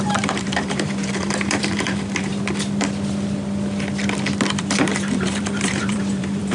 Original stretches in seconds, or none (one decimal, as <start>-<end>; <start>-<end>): 2.3-4.6